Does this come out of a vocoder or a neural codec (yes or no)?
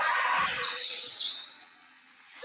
yes